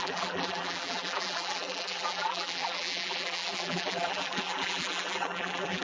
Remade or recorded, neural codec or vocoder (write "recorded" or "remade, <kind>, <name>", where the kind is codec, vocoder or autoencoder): remade, vocoder, BigVGAN v2